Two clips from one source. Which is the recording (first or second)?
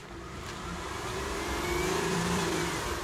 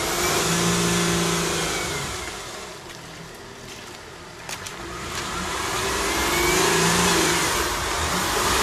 second